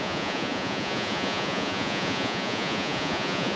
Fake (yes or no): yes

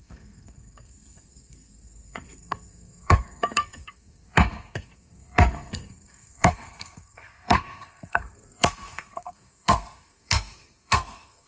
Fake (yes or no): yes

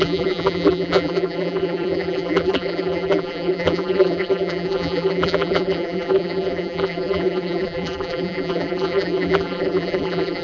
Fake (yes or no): yes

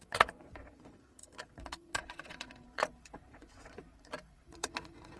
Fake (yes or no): yes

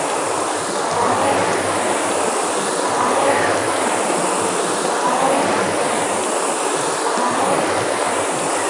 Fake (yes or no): no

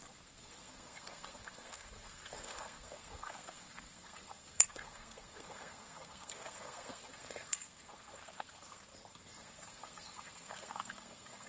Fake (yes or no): yes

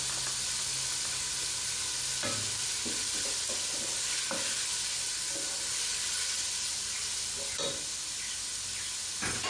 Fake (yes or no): no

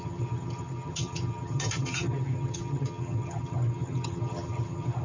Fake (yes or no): yes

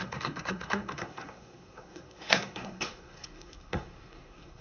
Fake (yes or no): yes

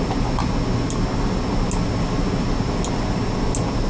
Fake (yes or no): no